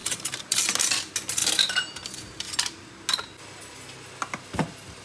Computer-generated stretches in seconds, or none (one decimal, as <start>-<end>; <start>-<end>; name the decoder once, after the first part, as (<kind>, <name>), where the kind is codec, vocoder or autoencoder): 0.0-0.6 (vocoder, BigVGAN v2); 1.4-2.6